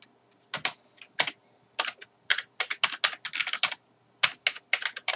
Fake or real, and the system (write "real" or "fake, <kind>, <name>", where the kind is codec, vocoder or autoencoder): real